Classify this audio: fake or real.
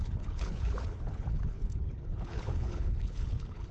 fake